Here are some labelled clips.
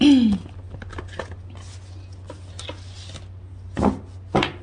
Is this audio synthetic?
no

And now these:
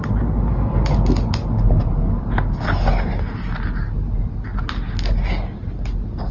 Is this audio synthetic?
no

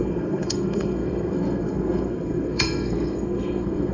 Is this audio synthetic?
yes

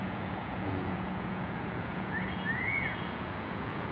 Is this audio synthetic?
yes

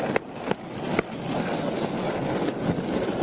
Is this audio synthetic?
no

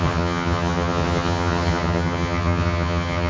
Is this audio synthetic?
yes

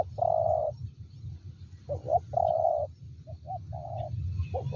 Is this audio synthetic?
no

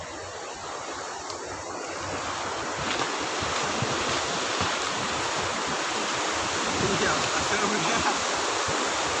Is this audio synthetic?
no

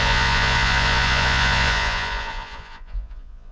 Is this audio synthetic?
yes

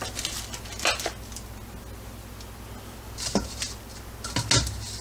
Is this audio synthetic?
no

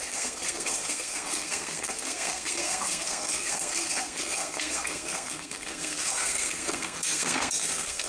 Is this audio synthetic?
yes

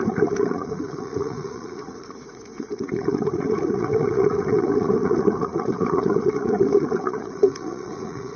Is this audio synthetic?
yes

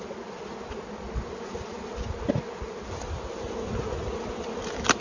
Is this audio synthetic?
no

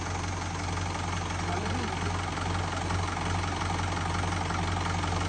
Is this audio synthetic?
no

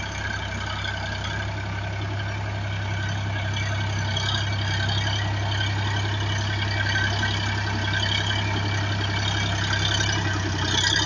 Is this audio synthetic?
no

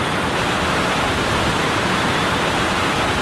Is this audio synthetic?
no